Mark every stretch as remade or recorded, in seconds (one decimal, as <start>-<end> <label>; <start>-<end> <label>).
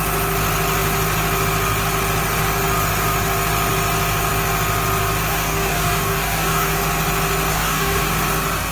0.0-5.3 recorded; 5.3-6.8 remade; 6.8-7.5 recorded; 7.5-8.1 remade; 8.1-8.7 recorded